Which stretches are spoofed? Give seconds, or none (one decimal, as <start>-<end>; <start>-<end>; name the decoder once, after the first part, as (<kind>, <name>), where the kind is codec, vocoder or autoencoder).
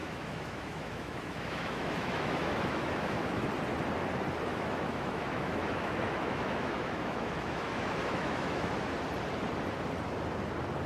0.0-3.5 (autoencoder, DAC-VAE); 4.5-8.7